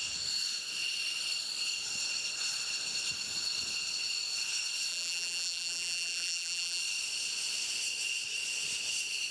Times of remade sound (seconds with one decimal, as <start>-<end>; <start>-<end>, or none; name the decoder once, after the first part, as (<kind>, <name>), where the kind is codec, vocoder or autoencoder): 4.9-6.8 (vocoder, BigVGAN v2)